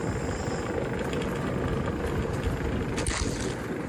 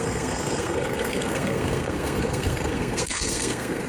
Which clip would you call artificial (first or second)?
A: second